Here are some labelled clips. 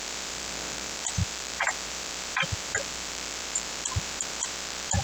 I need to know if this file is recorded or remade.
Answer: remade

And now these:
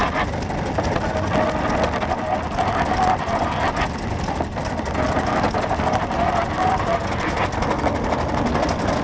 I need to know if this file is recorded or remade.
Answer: recorded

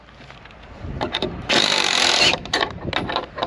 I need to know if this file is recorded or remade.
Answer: remade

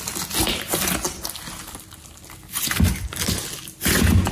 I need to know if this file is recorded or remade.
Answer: recorded